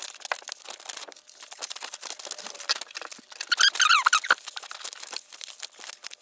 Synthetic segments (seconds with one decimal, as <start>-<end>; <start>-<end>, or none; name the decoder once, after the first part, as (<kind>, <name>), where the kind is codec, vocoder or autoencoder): none